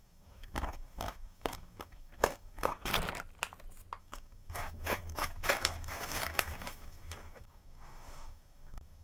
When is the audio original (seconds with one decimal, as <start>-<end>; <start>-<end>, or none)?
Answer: 2.9-4.0